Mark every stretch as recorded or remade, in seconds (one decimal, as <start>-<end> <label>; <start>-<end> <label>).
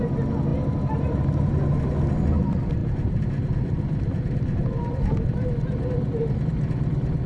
0.0-2.8 recorded; 2.8-5.0 remade; 5.0-7.3 recorded